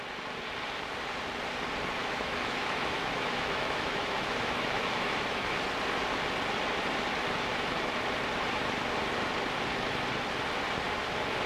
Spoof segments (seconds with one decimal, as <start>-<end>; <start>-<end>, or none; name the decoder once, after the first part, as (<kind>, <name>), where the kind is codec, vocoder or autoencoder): 2.0-5.5 (autoencoder, DAC-VAE)